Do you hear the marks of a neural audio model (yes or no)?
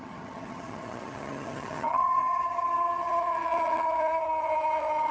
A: yes